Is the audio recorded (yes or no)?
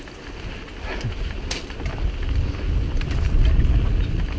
yes